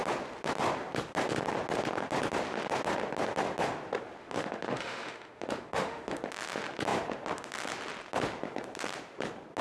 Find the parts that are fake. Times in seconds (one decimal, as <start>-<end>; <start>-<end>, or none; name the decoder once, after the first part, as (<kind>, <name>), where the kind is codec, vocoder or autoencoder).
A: 4.2-6.2 (autoencoder, DAC-VAE)